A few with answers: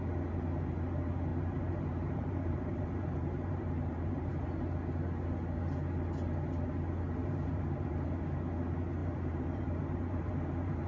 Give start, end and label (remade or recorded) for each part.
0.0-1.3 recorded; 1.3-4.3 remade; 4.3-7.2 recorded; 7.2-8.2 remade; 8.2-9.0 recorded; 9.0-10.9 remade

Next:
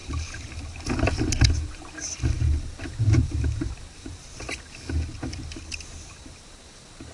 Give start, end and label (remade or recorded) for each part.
0.0-2.2 remade; 2.2-2.7 recorded; 2.7-4.4 remade; 4.4-5.9 recorded; 5.9-6.6 remade; 6.6-7.1 recorded